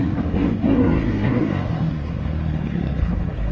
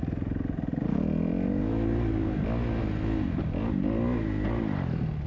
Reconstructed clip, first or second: first